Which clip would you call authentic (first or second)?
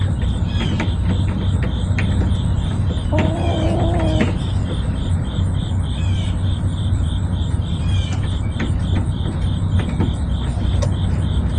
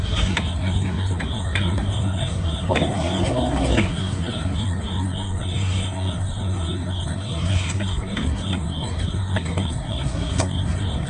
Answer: first